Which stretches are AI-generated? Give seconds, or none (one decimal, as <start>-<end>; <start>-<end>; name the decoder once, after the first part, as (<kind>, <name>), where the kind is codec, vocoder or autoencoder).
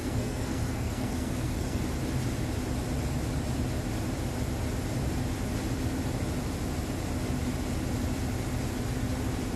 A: 0.0-1.8 (codec, SNAC)